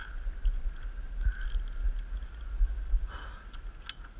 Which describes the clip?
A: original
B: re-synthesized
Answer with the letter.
A